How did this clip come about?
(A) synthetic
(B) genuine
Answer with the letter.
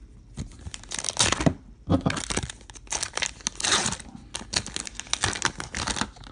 B